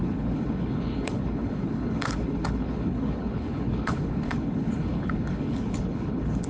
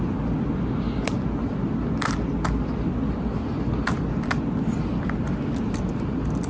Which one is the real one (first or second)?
second